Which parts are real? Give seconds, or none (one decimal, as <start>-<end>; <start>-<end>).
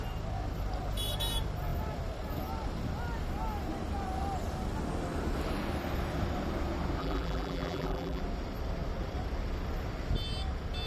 0.0-7.0; 8.2-10.9